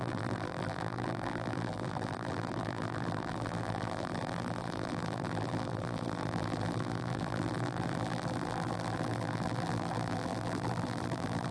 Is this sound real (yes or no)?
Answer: no